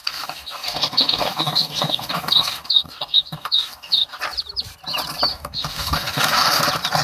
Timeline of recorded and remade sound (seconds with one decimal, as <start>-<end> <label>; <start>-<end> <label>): 0.0-4.2 remade; 4.2-5.3 recorded; 5.3-6.6 remade; 6.6-7.0 recorded